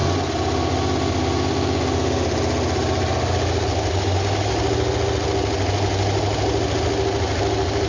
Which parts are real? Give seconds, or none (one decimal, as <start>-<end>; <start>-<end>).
0.0-7.9